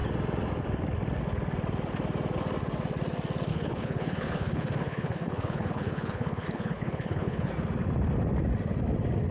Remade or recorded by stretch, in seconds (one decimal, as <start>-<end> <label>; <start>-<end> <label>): 0.0-3.5 recorded; 3.5-7.5 remade; 7.5-9.3 recorded